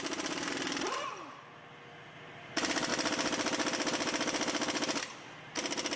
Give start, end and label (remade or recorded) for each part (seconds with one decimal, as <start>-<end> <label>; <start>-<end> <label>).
0.0-6.0 recorded